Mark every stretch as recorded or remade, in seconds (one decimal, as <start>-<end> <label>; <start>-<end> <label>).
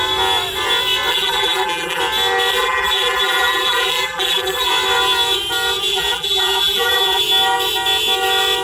0.0-1.1 recorded; 1.1-2.0 remade; 2.0-2.5 recorded; 2.5-4.7 remade; 4.7-5.9 recorded; 5.9-7.2 remade; 7.2-8.6 recorded